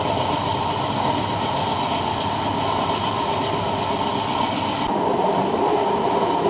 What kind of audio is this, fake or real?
real